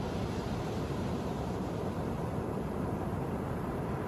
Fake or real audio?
fake